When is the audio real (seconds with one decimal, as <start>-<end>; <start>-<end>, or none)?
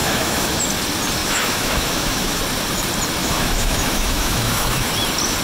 0.6-1.2; 2.4-3.2; 4.9-5.4